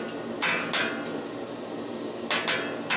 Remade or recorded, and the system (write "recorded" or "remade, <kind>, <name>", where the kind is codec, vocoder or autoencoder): recorded